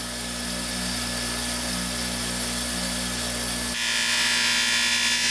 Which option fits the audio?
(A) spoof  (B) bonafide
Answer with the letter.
B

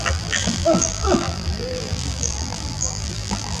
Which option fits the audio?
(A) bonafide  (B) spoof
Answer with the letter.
B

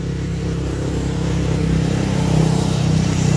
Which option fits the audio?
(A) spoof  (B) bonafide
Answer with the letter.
A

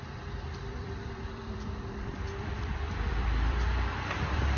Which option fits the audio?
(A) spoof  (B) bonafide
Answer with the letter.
A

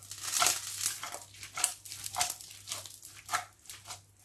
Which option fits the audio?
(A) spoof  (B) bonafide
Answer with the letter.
B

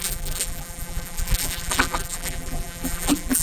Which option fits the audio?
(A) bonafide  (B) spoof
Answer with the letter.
B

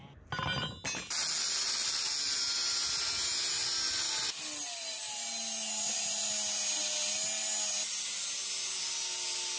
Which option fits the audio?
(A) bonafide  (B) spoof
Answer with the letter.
A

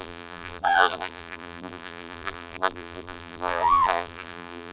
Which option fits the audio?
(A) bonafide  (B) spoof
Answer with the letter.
B